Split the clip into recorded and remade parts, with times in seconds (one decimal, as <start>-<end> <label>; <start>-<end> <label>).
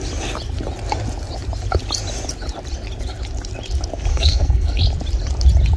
0.0-4.1 recorded; 4.1-4.8 remade; 4.8-5.8 recorded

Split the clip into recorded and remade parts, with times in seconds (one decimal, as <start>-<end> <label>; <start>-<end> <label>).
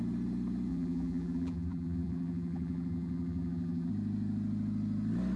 0.0-0.7 recorded; 0.7-3.9 remade; 3.9-5.4 recorded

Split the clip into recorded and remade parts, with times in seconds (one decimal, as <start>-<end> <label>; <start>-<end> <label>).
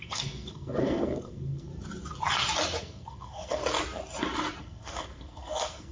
0.0-1.7 remade; 1.7-2.8 recorded; 2.8-3.6 remade; 3.6-4.6 recorded; 4.6-5.9 remade